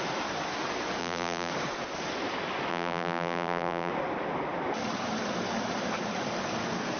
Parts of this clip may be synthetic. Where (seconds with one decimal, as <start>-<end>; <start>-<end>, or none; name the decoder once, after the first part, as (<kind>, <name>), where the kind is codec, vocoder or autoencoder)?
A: 1.0-1.5 (vocoder, BigVGAN v2); 2.7-3.9